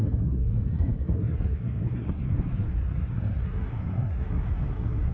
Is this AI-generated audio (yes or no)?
yes